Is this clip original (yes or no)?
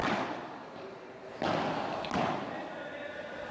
yes